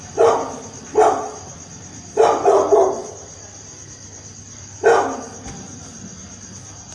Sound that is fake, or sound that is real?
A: real